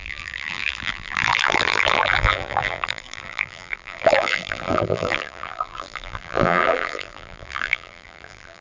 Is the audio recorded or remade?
remade